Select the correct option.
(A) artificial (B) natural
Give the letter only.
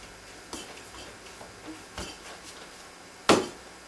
B